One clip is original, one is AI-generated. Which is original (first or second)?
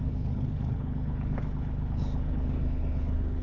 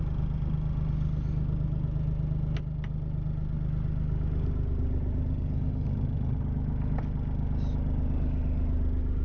second